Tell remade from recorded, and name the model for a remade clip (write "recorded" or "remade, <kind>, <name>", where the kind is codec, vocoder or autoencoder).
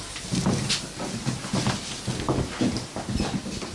recorded